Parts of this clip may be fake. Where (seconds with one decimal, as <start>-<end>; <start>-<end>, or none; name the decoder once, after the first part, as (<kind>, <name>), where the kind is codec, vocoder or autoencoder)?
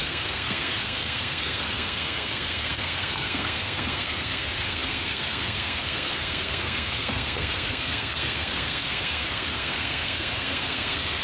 0.0-11.2 (codec, SNAC)